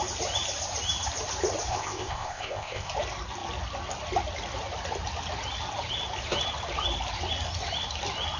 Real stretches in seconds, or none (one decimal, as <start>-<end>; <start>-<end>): 0.0-1.7; 2.9-8.4